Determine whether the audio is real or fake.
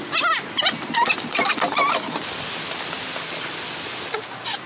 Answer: real